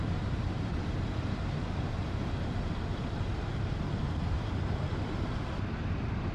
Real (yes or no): no